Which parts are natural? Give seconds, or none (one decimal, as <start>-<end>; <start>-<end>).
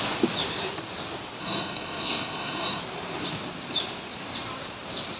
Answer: 0.0-1.4; 2.8-5.2